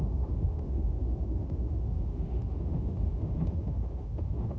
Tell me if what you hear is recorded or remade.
remade